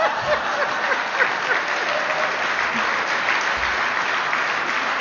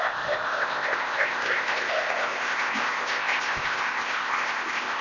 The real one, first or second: first